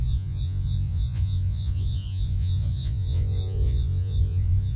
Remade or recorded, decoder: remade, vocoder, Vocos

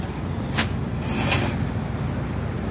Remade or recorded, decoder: recorded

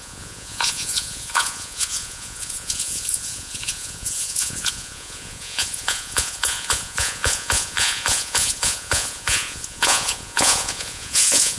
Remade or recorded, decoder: remade, vocoder, Vocos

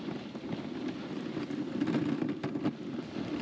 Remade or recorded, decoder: recorded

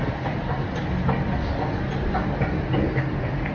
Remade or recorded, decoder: recorded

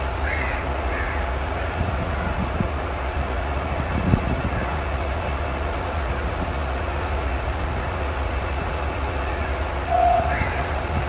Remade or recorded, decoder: remade, vocoder, Vocos